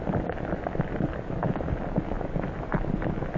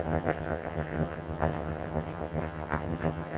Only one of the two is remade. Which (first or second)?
second